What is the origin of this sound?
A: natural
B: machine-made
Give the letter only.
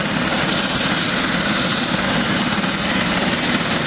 A